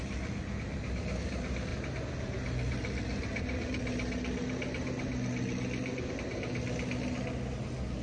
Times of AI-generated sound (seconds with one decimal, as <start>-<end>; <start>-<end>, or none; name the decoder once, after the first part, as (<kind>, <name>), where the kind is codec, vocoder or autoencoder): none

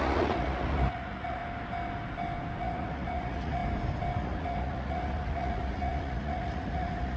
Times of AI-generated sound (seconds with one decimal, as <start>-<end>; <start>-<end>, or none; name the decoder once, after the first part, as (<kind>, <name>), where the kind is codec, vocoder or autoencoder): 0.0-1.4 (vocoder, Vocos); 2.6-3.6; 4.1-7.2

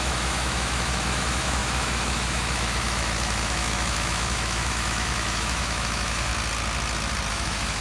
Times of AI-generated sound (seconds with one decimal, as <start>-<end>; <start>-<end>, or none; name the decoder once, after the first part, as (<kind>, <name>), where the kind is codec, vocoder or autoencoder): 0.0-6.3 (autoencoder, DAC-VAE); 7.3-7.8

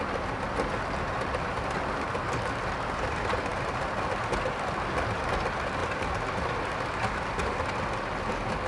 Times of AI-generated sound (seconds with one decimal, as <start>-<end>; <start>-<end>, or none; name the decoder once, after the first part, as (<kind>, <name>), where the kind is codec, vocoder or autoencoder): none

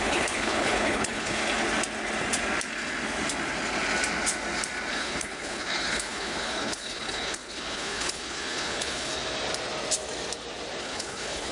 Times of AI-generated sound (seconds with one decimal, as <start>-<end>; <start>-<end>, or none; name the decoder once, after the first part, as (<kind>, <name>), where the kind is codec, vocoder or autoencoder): 0.0-1.4 (codec, HILCodec); 4.9-9.1; 10.8-11.5

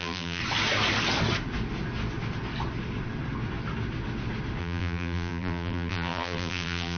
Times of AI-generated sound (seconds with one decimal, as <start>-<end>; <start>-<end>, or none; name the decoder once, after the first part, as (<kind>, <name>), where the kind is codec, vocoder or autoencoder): 0.0-0.4 (vocoder, BigVGAN v2); 4.6-7.0

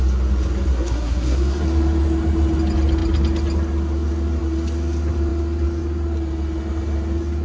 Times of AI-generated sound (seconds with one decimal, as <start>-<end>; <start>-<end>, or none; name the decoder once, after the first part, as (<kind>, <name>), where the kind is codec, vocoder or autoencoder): 0.7-1.6 (codec, SNAC)

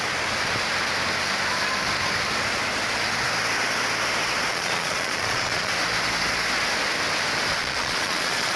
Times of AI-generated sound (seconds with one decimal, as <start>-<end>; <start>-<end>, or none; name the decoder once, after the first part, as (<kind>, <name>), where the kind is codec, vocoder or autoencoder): 4.5-5.7 (vocoder, Vocos); 7.6-8.6